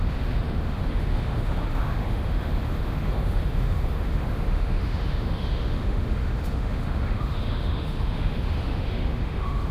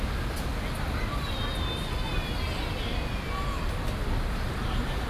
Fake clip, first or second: first